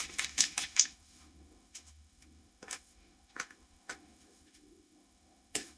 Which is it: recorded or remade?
remade